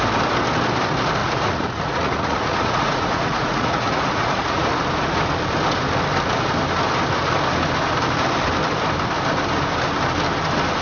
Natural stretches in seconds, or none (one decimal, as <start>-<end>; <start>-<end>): 0.0-1.2; 4.7-10.8